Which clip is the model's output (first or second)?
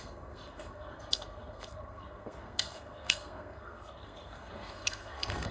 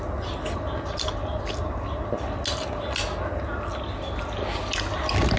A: first